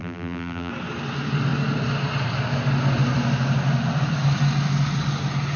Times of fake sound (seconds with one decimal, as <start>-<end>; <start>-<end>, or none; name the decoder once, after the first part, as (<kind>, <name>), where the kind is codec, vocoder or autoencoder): 0.0-0.7 (vocoder, BigVGAN v2)